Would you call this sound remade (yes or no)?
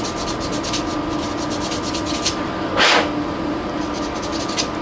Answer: no